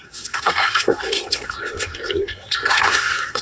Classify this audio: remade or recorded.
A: remade